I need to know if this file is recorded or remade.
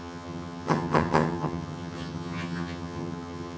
remade